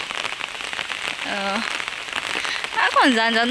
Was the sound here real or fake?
real